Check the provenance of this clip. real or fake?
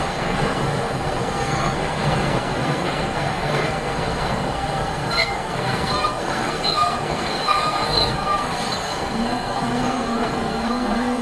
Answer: fake